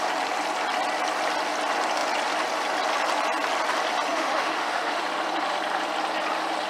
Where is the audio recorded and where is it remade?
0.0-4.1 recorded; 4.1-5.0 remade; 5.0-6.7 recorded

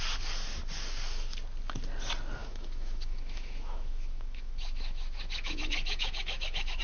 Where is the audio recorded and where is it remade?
0.0-2.4 recorded; 2.4-6.8 remade

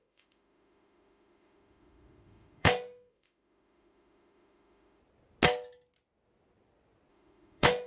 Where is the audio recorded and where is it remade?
0.0-5.0 remade; 5.0-7.1 recorded; 7.1-7.9 remade